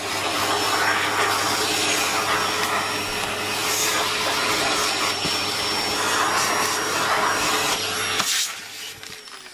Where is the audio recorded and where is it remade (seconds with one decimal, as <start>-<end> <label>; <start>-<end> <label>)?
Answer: 0.0-9.5 recorded